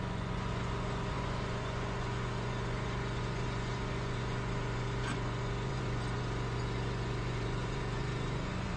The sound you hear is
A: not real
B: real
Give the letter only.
A